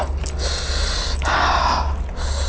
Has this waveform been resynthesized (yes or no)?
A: no